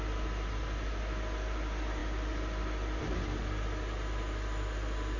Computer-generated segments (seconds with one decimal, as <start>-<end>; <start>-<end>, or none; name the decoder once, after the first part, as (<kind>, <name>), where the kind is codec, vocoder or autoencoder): none